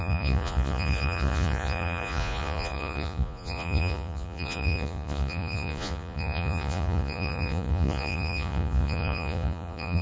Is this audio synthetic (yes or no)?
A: yes